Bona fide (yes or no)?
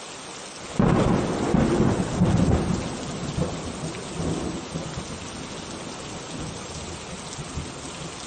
yes